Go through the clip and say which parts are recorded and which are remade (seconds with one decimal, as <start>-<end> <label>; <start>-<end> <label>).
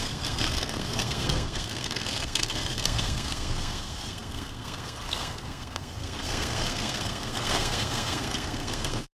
0.0-9.1 remade